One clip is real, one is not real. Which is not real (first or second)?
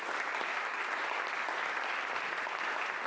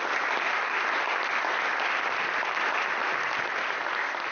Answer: second